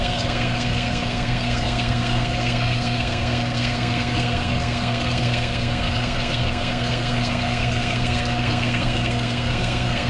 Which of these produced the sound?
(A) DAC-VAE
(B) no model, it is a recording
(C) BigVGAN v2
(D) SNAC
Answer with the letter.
D